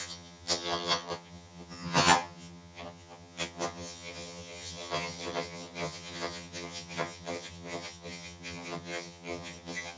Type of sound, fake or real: fake